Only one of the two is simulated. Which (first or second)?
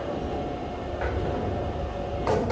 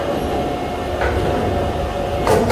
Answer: first